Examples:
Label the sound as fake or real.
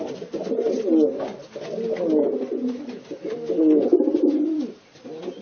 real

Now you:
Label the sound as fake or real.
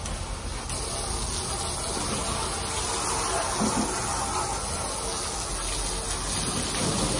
real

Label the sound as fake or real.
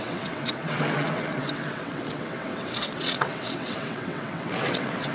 fake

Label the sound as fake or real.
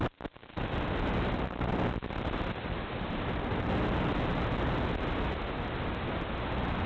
real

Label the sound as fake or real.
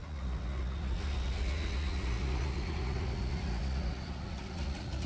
fake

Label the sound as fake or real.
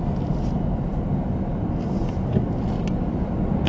real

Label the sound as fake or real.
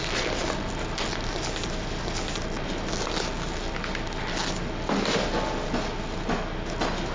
real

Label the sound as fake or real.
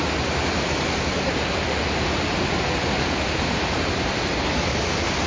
real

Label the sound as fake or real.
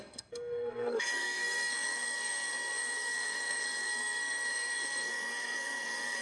fake